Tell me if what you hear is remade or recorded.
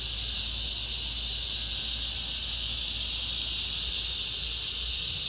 recorded